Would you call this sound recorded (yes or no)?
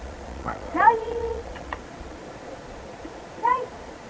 no